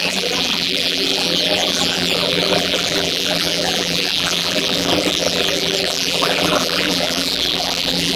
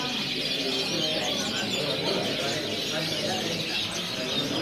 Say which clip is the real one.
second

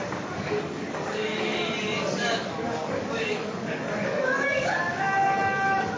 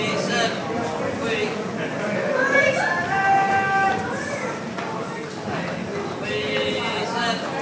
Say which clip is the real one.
second